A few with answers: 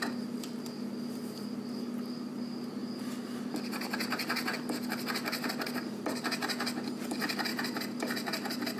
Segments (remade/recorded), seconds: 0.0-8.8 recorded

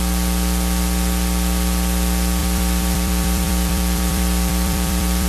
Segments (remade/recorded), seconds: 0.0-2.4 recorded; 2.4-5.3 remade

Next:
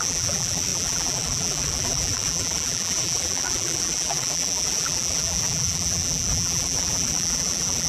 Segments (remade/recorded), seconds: 0.0-7.9 remade

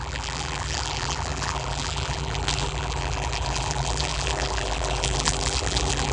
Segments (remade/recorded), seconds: 0.0-6.1 remade